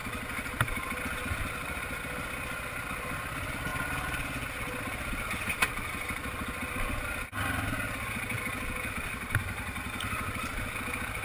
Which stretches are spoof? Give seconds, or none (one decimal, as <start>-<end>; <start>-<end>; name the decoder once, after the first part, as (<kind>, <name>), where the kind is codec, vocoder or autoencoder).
none